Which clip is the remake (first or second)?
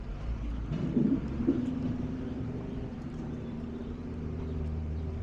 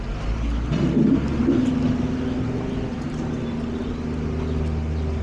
first